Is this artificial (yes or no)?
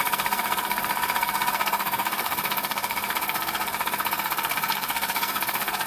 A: yes